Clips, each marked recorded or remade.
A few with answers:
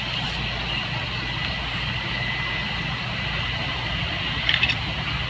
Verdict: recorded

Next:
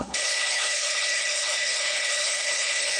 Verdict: remade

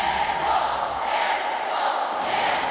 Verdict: recorded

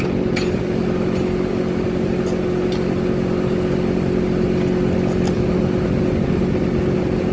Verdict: recorded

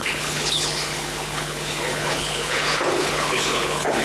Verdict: remade